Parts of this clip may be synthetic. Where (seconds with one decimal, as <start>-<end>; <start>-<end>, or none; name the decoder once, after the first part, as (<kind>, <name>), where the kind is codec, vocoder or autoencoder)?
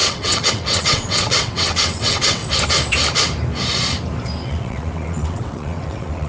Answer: 0.0-2.4 (vocoder, WaveNeXt); 4.4-6.3